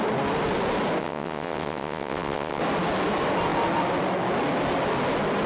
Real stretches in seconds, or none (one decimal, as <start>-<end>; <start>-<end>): 0.0-1.0; 2.6-5.5